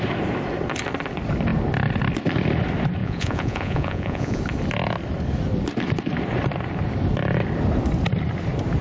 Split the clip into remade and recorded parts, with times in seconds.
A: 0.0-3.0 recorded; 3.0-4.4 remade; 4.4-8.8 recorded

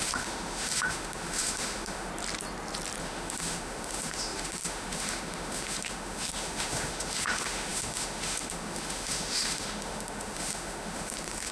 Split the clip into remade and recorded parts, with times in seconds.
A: 0.0-2.1 remade; 2.1-3.0 recorded; 3.0-11.5 remade